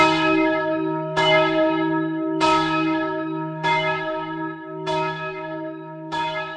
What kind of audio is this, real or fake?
fake